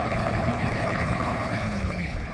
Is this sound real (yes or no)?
no